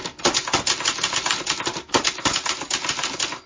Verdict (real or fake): real